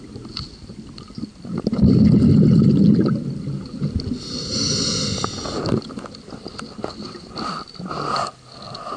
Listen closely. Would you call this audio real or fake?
real